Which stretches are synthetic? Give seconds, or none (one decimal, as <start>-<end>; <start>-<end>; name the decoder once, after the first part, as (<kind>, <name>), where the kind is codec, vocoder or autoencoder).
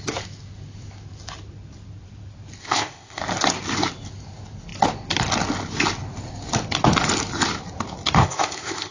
2.6-3.2 (codec, ZipCodec); 8.2-8.9